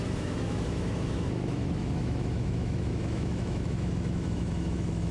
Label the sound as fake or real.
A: fake